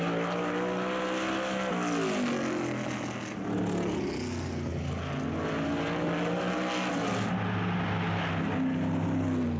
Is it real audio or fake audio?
real